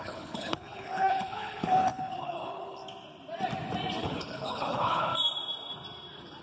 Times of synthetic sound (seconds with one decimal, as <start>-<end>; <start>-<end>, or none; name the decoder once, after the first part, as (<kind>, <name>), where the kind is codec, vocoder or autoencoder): 0.0-2.8 (codec, HILCodec); 4.0-5.1